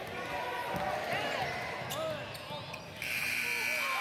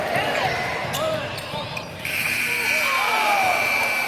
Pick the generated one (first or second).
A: second